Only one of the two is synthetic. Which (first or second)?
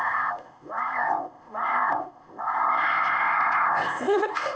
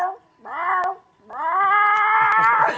first